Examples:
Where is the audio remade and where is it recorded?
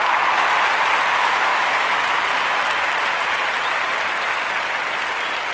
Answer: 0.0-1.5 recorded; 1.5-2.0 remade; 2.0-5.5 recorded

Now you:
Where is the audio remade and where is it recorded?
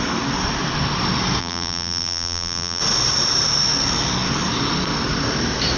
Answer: 0.0-1.4 recorded; 1.4-2.8 remade; 2.8-5.8 recorded